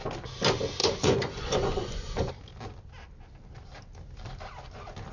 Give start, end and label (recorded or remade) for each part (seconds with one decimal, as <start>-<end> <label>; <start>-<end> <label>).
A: 0.0-0.8 recorded; 0.8-2.3 remade; 2.3-5.1 recorded